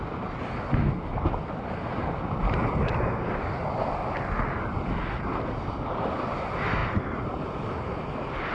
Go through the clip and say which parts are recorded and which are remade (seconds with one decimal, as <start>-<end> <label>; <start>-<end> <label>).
0.0-8.5 recorded